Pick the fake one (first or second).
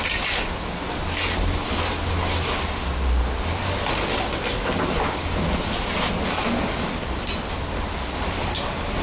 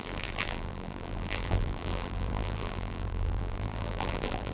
second